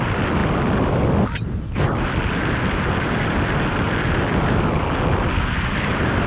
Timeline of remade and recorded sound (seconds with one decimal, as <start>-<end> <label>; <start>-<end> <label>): 0.0-6.3 recorded